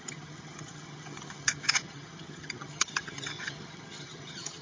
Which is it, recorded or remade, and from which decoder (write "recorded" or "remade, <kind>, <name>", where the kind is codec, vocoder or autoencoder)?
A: remade, vocoder, HiFi-GAN